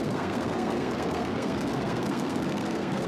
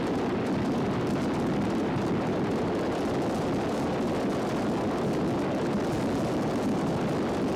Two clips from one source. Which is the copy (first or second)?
first